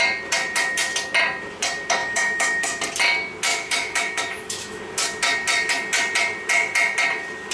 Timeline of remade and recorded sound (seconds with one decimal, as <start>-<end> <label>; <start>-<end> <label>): 0.0-2.0 recorded; 2.0-2.8 remade; 2.8-3.5 recorded; 3.5-4.8 remade; 4.8-7.5 recorded